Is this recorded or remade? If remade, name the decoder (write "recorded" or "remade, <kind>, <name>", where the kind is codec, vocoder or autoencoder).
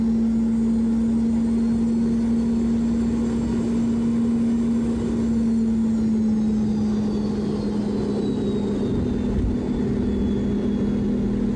recorded